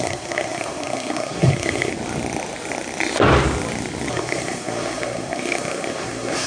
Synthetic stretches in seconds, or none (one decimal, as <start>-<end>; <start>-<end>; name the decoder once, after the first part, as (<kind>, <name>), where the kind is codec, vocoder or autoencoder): 0.0-1.9 (codec, SNAC); 4.1-6.5